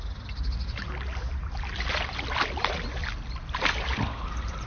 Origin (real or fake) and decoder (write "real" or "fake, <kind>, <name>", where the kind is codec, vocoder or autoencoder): real